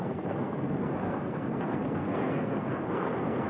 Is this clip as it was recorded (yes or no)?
no